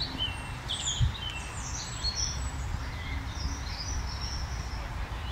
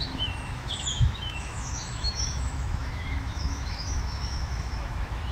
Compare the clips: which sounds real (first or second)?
first